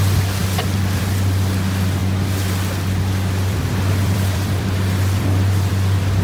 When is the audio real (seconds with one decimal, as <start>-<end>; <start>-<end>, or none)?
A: 0.0-2.0; 5.7-6.2